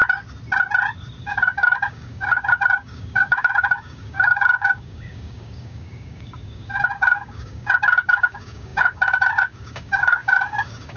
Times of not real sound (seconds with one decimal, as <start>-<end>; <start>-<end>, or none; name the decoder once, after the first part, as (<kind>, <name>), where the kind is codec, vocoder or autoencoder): 1.2-11.0 (codec, DAC)